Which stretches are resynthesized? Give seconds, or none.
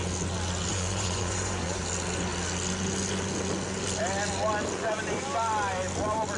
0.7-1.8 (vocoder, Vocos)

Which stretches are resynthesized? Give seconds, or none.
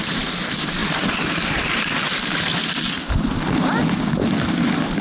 none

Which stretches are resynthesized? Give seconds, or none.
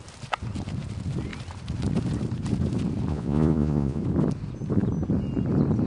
3.1-4.0 (vocoder, Vocos)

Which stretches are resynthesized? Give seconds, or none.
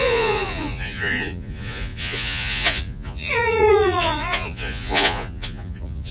0.0-6.1 (vocoder, Vocos)